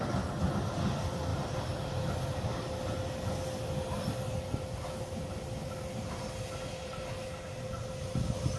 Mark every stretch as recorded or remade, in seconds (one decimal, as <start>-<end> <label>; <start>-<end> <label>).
0.0-8.6 recorded

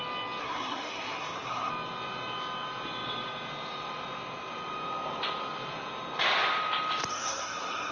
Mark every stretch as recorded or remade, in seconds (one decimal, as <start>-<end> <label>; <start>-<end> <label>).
0.0-0.4 recorded; 0.4-1.7 remade; 1.7-7.1 recorded; 7.1-7.9 remade

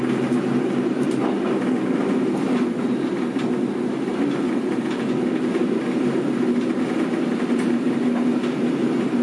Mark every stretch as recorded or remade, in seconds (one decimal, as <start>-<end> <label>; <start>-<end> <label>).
0.0-9.2 recorded

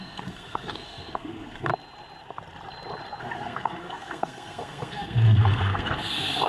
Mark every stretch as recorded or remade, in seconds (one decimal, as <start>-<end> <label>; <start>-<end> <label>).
0.0-1.7 remade; 1.7-3.2 recorded; 3.2-6.5 remade

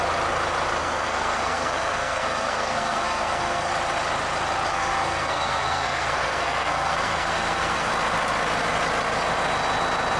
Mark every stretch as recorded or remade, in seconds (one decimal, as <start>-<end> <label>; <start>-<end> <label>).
0.0-0.8 recorded; 0.8-3.7 remade; 3.7-4.7 recorded; 4.7-7.9 remade; 7.9-10.2 recorded

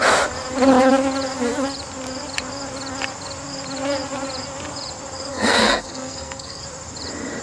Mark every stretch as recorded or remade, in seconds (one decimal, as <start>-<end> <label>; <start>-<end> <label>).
0.0-5.3 recorded; 5.3-6.6 remade; 6.6-7.4 recorded

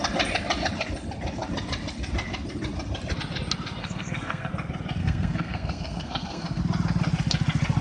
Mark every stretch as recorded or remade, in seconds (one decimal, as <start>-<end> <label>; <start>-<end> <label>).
0.0-3.8 recorded; 3.8-4.5 remade; 4.5-5.0 recorded; 5.0-6.6 remade; 6.6-7.8 recorded